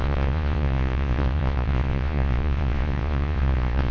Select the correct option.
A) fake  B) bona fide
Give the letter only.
A